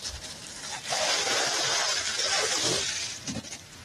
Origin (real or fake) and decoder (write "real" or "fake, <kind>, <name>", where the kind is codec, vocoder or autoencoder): fake, vocoder, BigVGAN v2